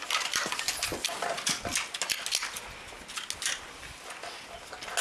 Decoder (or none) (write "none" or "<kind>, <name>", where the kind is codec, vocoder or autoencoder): none